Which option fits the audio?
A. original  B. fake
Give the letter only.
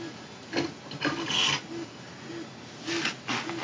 A